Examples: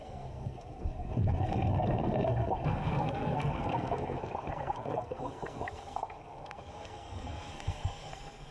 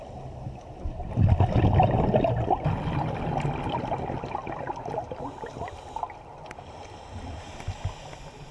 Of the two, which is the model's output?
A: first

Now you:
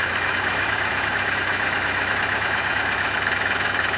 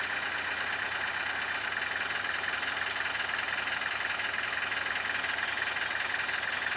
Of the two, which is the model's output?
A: first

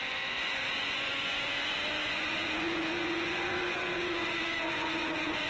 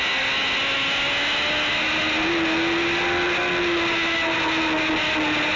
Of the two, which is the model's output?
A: first